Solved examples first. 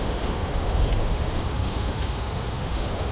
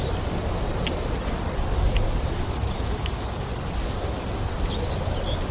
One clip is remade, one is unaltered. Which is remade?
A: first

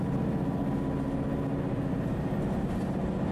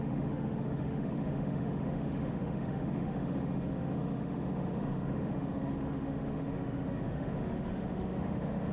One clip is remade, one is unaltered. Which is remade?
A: second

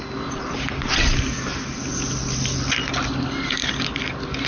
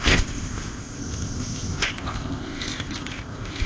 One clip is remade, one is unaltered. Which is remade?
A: second